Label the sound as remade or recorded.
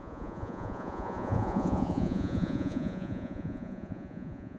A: remade